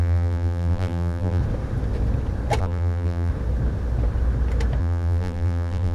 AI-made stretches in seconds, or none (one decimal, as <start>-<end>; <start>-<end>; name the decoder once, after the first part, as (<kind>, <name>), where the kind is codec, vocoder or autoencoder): 0.0-1.4 (vocoder, BigVGAN v2); 2.6-3.3; 4.8-5.9